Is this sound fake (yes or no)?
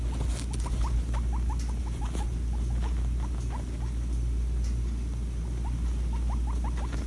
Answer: no